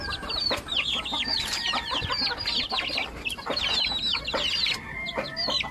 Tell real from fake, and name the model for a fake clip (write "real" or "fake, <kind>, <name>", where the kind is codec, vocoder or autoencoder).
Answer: real